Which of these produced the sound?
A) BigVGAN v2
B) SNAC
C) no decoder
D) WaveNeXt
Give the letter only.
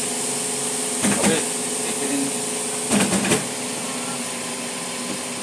C